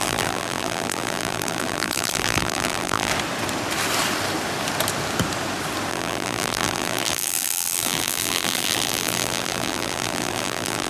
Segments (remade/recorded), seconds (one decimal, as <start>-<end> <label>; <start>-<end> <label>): 0.0-3.1 remade; 3.1-5.9 recorded; 5.9-10.9 remade